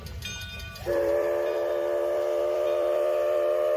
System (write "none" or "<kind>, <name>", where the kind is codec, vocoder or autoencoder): vocoder, BigVGAN v2